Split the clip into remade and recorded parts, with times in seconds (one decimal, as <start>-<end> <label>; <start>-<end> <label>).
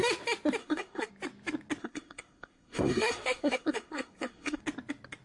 0.0-0.6 recorded; 0.6-1.1 remade; 1.1-1.8 recorded; 1.8-4.6 remade; 4.6-5.2 recorded